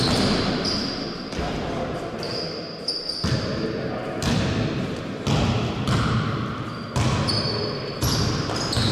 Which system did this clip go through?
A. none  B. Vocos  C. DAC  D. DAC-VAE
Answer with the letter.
A